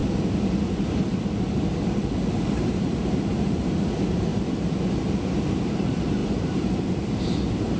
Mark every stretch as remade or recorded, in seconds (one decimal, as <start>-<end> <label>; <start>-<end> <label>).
0.0-2.4 recorded; 2.4-4.3 remade; 4.3-5.7 recorded; 5.7-7.8 remade